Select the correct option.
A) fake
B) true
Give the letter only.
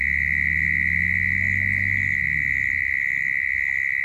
B